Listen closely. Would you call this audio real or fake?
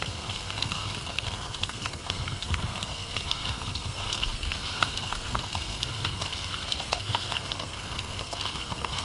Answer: fake